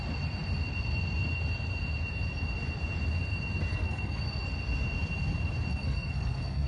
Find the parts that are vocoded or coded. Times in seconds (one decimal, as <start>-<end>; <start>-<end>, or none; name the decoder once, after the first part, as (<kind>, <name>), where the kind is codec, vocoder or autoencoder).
3.7-4.2 (codec, SNAC); 5.7-6.7